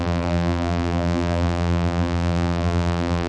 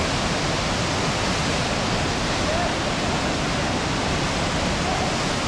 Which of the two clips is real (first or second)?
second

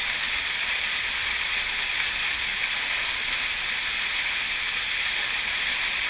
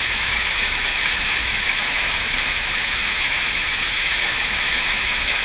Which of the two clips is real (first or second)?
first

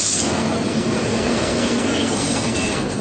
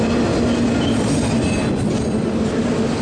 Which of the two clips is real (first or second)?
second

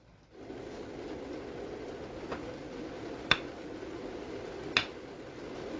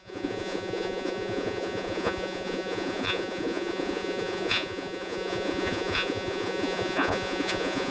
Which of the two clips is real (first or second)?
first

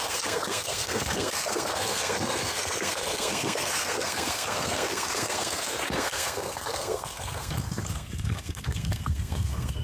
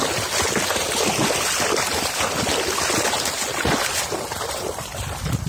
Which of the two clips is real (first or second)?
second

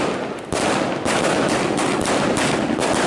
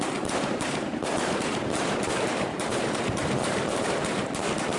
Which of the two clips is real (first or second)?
first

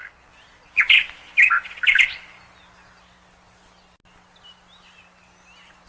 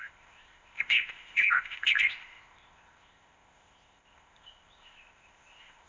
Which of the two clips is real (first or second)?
first